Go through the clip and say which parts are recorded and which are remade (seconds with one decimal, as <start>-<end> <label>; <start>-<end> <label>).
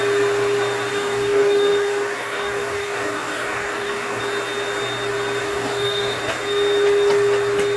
0.0-0.9 recorded; 0.9-4.2 remade; 4.2-5.4 recorded; 5.4-6.2 remade; 6.2-7.8 recorded